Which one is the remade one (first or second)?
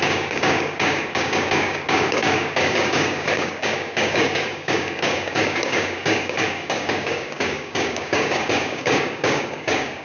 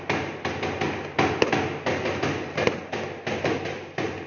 first